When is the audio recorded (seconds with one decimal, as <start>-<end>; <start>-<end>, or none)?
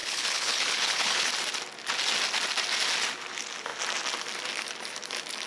1.3-5.5